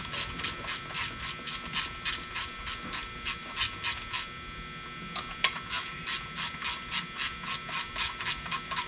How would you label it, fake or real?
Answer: real